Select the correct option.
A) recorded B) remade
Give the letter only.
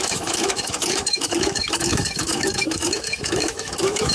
B